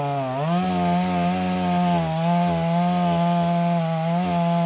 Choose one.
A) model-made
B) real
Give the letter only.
B